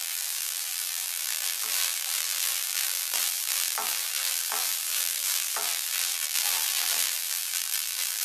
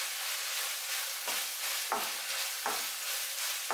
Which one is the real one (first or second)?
second